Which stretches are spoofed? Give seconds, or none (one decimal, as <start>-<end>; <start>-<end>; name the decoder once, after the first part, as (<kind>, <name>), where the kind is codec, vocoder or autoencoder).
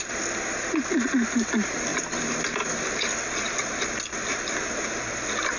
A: none